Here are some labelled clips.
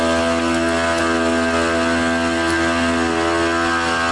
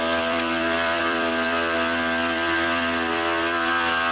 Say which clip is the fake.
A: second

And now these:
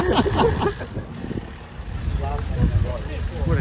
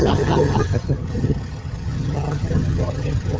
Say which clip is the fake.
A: second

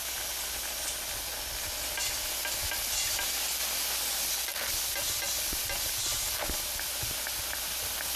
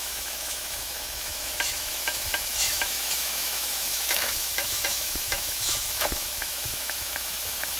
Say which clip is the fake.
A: second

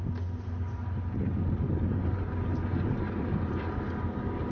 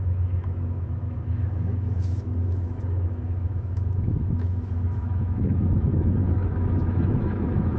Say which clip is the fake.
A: second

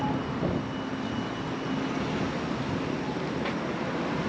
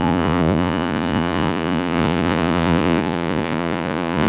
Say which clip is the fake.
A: second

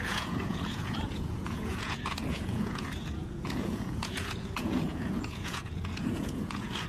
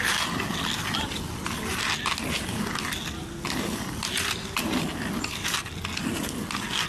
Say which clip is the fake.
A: first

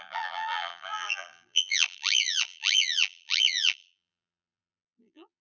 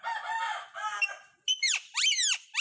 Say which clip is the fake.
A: first